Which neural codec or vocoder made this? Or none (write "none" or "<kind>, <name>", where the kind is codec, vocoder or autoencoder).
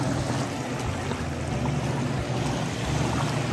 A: none